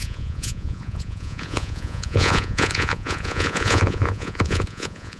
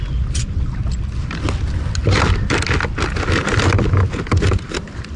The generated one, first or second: first